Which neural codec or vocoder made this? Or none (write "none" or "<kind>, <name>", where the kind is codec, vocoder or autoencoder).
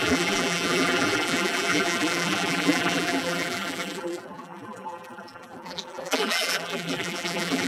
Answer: vocoder, BigVGAN v2